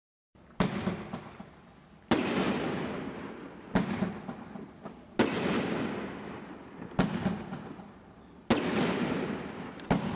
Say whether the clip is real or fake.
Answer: real